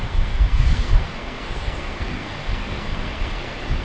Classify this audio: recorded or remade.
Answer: remade